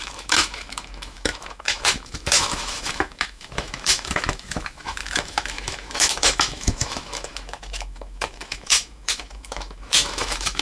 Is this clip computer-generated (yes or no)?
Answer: yes